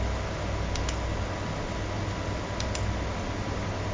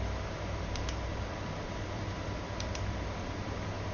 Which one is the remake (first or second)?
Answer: second